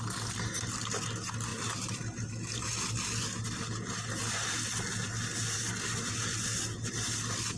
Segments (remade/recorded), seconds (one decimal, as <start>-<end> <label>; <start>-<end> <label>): 0.0-7.6 recorded